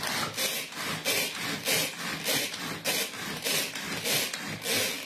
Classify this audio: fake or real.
real